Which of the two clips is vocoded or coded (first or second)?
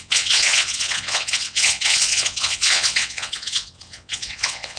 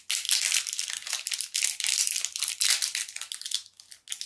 first